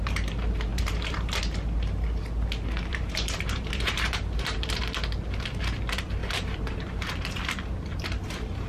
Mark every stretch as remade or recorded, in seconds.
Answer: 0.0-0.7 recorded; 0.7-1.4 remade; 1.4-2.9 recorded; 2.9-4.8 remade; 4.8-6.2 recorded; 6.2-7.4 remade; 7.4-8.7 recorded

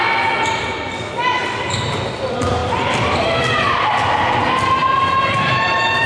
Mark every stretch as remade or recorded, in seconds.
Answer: 0.0-1.4 recorded; 1.4-2.0 remade; 2.0-2.6 recorded; 2.6-3.9 remade; 3.9-4.8 recorded; 4.8-5.5 remade; 5.5-6.1 recorded

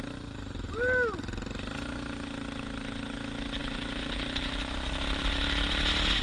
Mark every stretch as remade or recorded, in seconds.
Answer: 0.0-3.6 recorded; 3.6-5.3 remade; 5.3-6.2 recorded

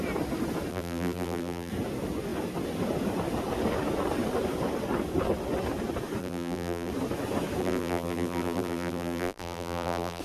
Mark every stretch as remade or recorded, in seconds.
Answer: 0.0-0.7 recorded; 0.7-1.7 remade; 1.7-6.2 recorded; 6.2-6.9 remade; 6.9-7.6 recorded; 7.6-10.2 remade

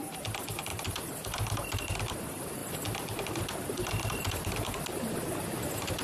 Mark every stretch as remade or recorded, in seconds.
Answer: 0.0-0.7 recorded; 0.7-1.8 remade; 1.8-2.6 recorded; 2.6-3.4 remade; 3.4-6.0 recorded

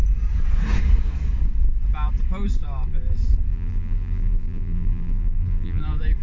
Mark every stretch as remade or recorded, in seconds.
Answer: 0.0-3.5 recorded; 3.5-5.8 remade; 5.8-6.2 recorded